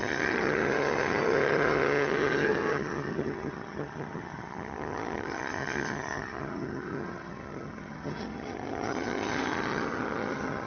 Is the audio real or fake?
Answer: fake